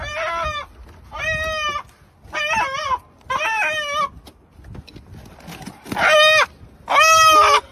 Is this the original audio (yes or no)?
yes